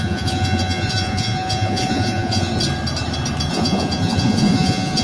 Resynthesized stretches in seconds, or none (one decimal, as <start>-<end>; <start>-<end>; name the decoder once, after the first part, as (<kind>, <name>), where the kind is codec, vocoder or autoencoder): 0.0-2.5 (vocoder, Vocos); 3.5-5.0